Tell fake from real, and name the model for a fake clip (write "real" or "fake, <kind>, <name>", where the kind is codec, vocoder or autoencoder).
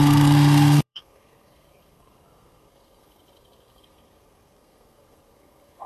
fake, codec, SNAC